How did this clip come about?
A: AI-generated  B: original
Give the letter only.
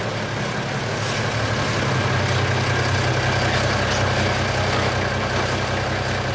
B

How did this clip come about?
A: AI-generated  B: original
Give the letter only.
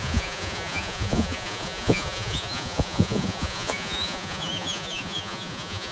A